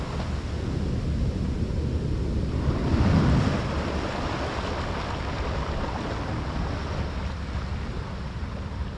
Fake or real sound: real